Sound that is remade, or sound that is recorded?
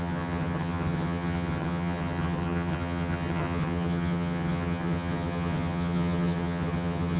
remade